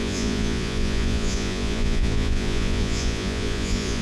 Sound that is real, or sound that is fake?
fake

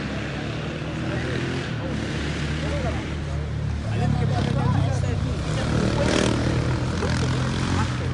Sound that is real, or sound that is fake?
real